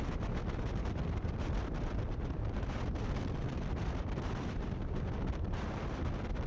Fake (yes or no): yes